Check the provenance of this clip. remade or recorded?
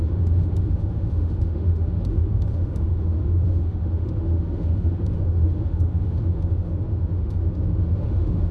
remade